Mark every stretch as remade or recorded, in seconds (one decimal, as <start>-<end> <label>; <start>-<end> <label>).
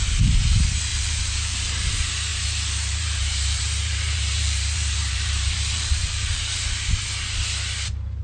0.0-0.9 recorded; 0.9-1.9 remade; 1.9-2.3 recorded; 2.3-6.4 remade; 6.4-8.2 recorded